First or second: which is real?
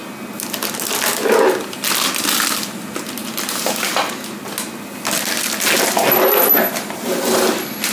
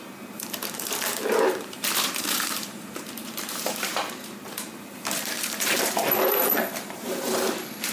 first